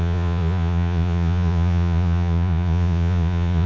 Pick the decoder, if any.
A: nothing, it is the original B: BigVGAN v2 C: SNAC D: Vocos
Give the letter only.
D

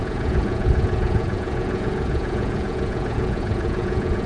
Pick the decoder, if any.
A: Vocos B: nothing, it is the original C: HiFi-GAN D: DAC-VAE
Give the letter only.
A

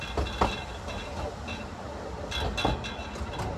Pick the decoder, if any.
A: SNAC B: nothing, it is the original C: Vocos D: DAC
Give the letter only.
B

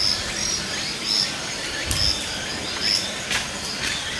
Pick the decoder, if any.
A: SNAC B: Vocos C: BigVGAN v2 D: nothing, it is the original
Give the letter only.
D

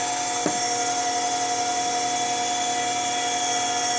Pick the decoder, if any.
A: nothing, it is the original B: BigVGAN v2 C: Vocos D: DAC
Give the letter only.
A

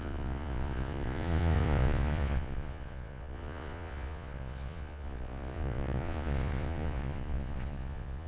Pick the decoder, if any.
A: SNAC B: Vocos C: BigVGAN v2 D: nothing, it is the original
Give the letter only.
B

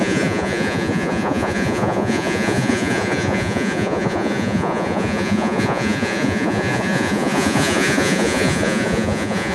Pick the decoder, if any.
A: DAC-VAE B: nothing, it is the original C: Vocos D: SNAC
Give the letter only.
C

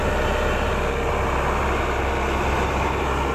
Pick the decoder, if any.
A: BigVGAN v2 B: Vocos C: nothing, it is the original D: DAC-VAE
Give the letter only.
C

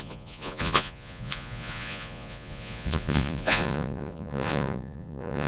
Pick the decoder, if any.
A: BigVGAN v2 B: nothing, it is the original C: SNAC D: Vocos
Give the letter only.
D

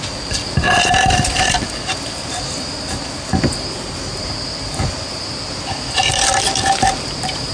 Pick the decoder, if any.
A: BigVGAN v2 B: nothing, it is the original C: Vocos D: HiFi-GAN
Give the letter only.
B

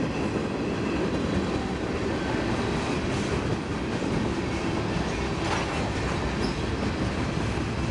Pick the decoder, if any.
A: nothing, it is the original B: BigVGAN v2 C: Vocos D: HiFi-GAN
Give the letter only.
A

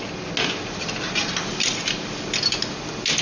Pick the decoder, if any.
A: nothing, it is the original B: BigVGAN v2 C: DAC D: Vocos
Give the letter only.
A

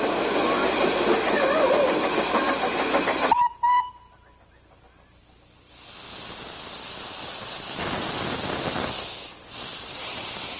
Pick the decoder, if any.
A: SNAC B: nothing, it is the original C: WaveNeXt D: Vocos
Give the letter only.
B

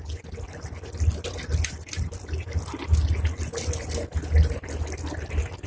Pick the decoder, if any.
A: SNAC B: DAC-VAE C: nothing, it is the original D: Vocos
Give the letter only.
C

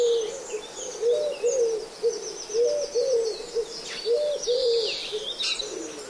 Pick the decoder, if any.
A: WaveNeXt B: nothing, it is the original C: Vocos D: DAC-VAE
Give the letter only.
B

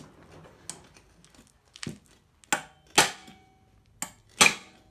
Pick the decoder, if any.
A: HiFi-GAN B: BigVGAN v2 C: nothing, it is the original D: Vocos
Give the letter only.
C